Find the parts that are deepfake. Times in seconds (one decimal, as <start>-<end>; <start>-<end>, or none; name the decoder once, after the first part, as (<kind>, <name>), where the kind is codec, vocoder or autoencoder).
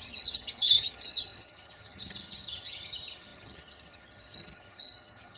0.0-5.4 (vocoder, HiFi-GAN)